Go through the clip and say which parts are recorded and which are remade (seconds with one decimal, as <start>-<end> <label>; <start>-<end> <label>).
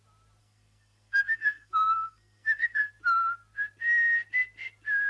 0.0-0.4 recorded; 0.4-2.9 remade; 2.9-5.1 recorded